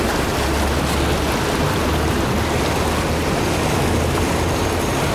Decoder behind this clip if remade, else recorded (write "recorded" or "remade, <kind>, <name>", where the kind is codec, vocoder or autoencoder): recorded